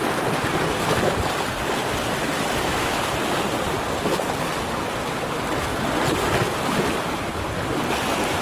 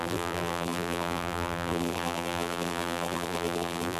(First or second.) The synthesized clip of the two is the second